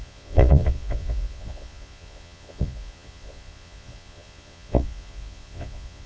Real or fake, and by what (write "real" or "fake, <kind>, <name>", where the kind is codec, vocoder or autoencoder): fake, vocoder, Vocos